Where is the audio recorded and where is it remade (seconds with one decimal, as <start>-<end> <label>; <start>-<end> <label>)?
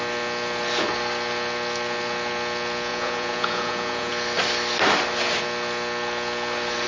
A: 0.0-2.9 recorded; 2.9-4.1 remade; 4.1-6.9 recorded